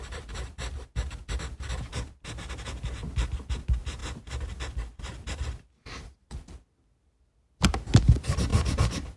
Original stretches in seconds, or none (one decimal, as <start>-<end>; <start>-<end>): 0.0-4.0; 4.6-8.5